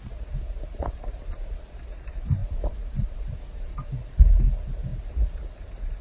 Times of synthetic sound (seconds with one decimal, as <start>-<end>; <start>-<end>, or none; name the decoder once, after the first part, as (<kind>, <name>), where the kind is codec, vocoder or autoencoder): none